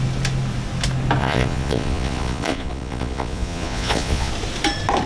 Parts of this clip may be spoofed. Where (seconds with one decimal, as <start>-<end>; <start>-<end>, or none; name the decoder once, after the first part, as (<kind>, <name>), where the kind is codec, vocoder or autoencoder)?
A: 1.2-4.3 (vocoder, Vocos)